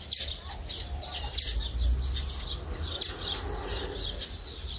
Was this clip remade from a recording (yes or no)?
no